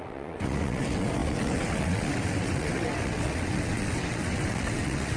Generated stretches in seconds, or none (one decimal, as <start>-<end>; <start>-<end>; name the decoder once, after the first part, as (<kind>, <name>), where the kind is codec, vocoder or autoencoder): 0.0-5.2 (vocoder, WaveNeXt)